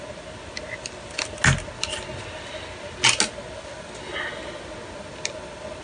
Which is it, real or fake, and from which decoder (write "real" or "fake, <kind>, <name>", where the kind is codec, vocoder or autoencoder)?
real